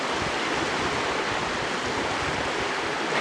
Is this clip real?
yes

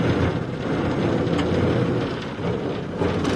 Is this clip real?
yes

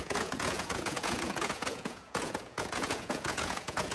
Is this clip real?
no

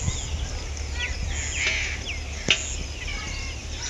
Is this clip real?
yes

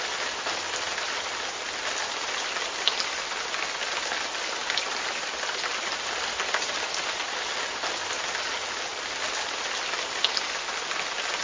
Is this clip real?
yes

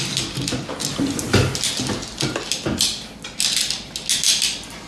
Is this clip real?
yes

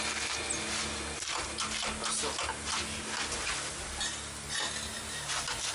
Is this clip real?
yes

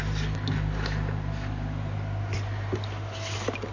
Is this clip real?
yes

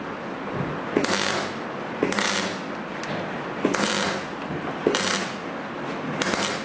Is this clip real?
yes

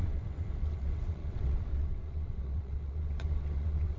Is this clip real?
no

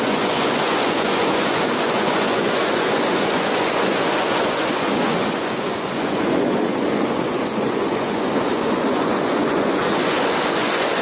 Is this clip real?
no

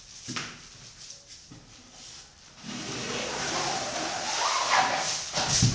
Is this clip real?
yes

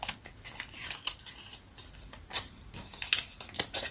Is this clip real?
yes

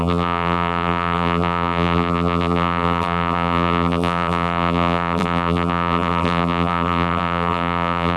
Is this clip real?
no